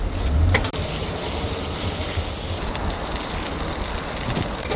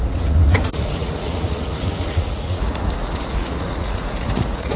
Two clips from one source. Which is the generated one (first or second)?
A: second